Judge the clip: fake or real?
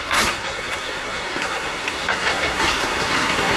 fake